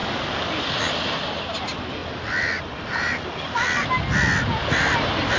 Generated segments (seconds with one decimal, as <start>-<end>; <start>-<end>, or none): none